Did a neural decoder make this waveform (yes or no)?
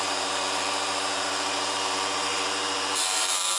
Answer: yes